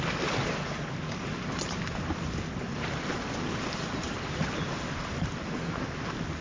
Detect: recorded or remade recorded